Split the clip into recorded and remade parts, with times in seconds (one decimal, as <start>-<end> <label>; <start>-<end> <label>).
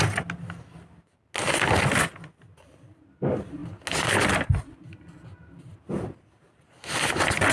0.0-7.5 recorded